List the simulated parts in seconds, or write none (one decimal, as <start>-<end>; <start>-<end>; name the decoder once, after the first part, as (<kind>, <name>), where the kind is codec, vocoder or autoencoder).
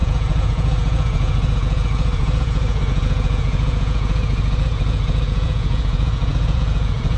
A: 0.0-7.2 (vocoder, Vocos)